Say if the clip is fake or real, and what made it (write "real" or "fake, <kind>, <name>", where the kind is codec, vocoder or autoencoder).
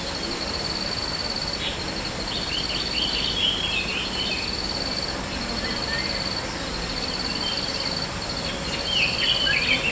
real